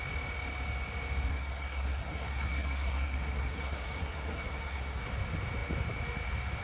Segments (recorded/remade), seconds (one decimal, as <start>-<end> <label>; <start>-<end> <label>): 0.0-1.3 recorded; 1.3-5.0 remade; 5.0-6.6 recorded